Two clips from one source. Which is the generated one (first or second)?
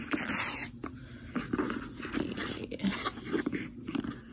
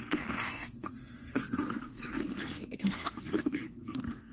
second